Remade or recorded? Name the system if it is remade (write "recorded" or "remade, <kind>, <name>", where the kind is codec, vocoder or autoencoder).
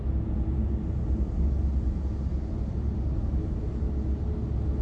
recorded